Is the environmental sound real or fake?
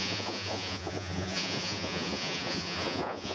fake